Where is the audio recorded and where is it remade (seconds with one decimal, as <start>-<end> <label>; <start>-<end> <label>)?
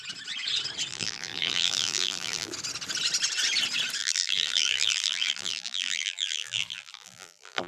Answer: 0.0-0.9 recorded; 0.9-2.5 remade; 2.5-4.0 recorded; 4.0-7.7 remade